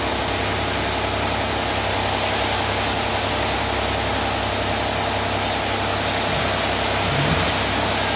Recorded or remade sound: recorded